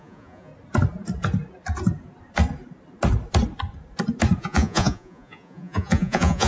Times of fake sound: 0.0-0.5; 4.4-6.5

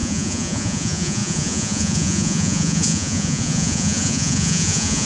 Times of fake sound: 0.0-5.1